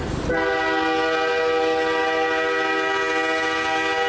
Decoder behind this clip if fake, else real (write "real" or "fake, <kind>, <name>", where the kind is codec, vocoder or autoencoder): real